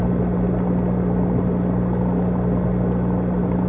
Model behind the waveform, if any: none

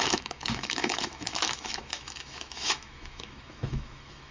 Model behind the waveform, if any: autoencoder, DAC-VAE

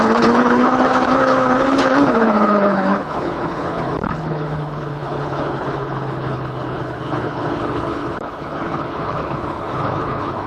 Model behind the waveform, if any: codec, HILCodec